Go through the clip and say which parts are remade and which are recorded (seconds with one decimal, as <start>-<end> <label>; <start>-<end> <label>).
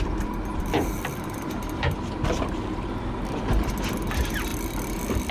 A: 0.0-0.5 recorded; 0.5-3.7 remade; 3.7-4.5 recorded; 4.5-5.3 remade